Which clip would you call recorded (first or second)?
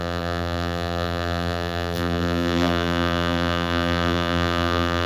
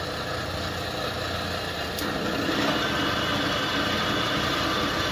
second